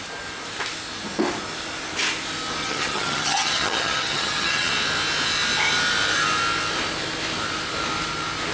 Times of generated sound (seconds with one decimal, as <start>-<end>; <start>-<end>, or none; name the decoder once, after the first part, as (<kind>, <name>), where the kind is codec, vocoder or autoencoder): 2.6-4.7 (vocoder, HiFi-GAN)